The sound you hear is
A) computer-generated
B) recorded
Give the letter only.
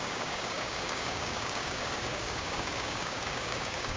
A